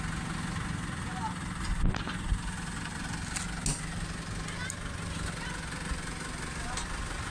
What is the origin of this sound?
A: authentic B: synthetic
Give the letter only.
A